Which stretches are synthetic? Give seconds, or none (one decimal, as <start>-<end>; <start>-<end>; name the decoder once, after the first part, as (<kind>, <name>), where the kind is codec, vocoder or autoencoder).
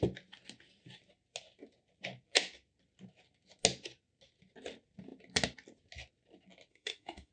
6.7-7.3 (autoencoder, DAC-VAE)